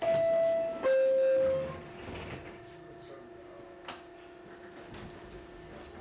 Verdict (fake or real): real